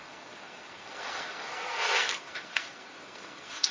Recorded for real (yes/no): no